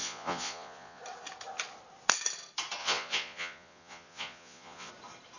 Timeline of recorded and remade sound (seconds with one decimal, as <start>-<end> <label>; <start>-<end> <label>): 0.0-1.0 remade; 1.0-2.8 recorded; 2.8-4.9 remade; 4.9-5.4 recorded